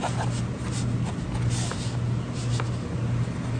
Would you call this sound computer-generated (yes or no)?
no